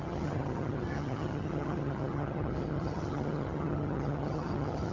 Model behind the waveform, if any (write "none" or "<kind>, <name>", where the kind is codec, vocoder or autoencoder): vocoder, HiFi-GAN